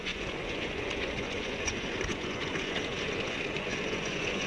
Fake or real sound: fake